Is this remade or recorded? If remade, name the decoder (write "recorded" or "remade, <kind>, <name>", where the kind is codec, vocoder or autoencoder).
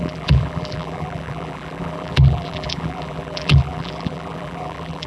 remade, vocoder, BigVGAN v2